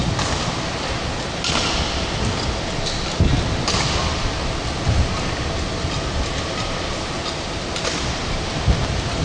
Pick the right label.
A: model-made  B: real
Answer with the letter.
B